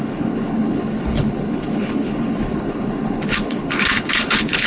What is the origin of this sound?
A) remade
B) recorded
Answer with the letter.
A